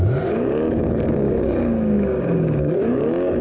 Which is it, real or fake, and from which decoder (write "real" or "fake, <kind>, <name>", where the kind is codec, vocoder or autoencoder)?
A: fake, codec, DAC